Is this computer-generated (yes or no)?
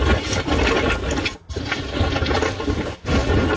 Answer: no